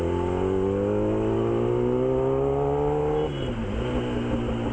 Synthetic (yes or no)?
no